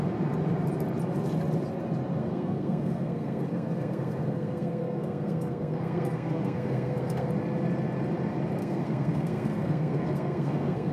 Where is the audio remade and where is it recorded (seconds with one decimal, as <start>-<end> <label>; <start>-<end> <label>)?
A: 0.0-2.2 recorded; 2.2-7.3 remade; 7.3-8.6 recorded; 8.6-10.9 remade